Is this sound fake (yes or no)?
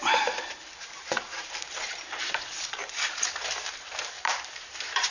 yes